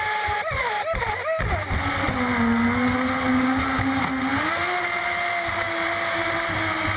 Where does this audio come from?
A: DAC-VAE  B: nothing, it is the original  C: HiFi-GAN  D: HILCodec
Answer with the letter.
B